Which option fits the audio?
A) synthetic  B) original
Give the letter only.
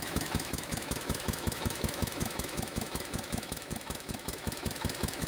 A